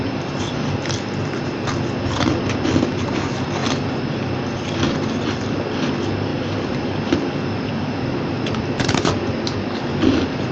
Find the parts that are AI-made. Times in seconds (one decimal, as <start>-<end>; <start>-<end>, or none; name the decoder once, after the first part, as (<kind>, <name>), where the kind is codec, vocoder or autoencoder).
none